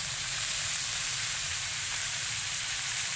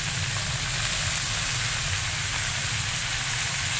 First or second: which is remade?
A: first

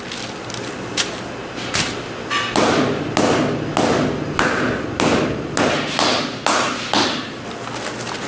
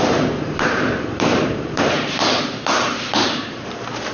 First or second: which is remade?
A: second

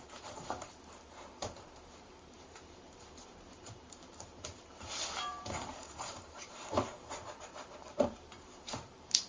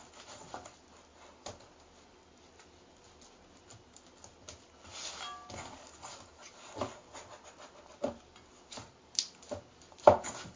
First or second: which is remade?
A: first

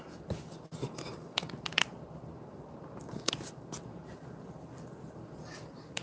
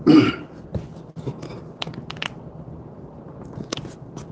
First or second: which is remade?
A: first